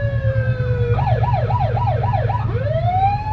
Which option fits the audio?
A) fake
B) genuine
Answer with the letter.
A